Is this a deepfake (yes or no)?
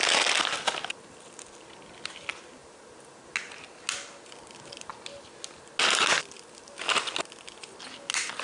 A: no